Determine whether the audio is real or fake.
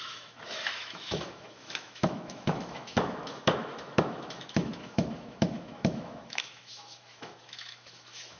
fake